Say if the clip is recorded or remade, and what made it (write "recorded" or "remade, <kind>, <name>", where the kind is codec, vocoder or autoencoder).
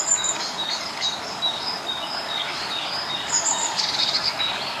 remade, codec, DAC